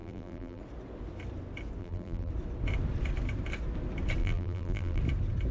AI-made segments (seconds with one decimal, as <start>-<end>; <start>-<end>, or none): 0.0-0.6; 1.8-2.3; 4.2-5.0